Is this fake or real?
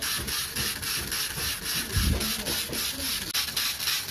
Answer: real